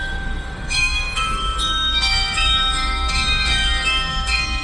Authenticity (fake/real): fake